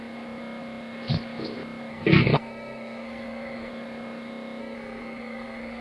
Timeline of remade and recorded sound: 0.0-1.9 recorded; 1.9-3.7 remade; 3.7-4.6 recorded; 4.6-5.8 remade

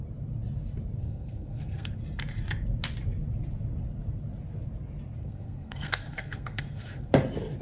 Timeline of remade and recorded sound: 0.0-1.0 recorded; 1.0-1.9 remade; 1.9-5.2 recorded; 5.2-7.1 remade; 7.1-7.6 recorded

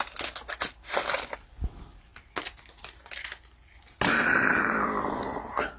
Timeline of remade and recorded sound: 0.0-5.8 recorded

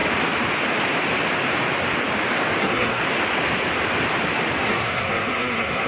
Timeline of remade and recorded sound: 0.0-2.6 recorded; 2.6-3.0 remade; 3.0-4.6 recorded; 4.6-5.9 remade

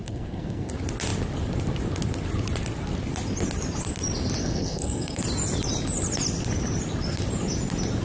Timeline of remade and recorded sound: 0.0-0.7 remade; 0.7-4.4 recorded; 4.4-5.2 remade; 5.2-8.0 recorded

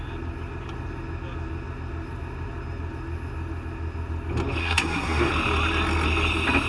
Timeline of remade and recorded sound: 0.0-4.6 recorded; 4.6-5.3 remade; 5.3-6.7 recorded

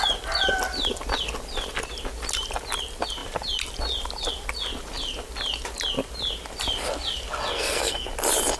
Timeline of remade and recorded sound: 0.0-7.5 recorded; 7.5-8.1 remade; 8.1-8.6 recorded